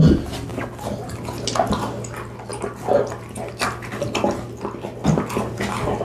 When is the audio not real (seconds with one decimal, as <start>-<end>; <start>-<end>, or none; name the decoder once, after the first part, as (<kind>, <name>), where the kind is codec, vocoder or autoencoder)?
none